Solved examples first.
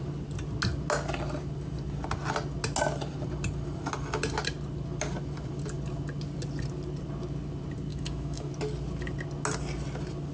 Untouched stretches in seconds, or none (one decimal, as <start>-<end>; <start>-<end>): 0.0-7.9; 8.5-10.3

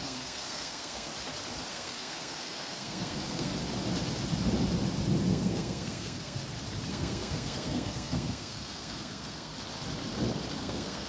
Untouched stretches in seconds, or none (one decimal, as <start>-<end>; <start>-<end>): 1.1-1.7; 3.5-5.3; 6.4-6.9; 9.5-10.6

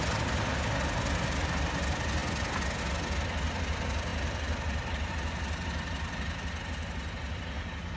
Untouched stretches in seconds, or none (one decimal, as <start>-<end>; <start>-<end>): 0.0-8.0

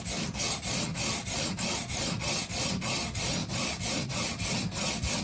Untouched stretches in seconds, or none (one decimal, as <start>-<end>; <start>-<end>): 0.0-0.9; 2.2-3.4